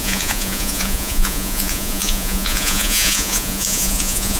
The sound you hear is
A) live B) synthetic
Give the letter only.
B